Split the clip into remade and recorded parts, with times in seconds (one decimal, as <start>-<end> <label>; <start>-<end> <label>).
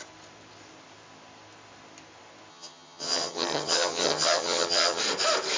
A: 0.0-2.5 recorded; 2.5-5.0 remade; 5.0-5.6 recorded